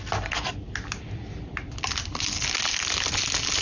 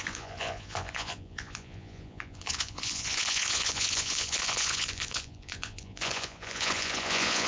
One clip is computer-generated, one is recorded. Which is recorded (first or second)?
first